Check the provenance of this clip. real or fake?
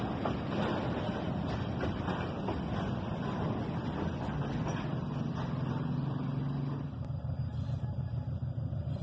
real